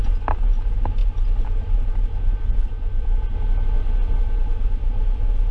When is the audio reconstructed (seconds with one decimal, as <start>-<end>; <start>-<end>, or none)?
none